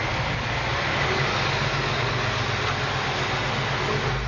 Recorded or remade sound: recorded